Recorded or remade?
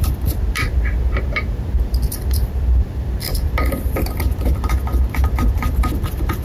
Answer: remade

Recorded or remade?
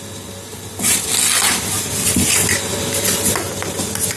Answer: recorded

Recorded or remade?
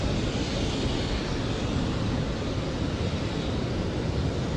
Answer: recorded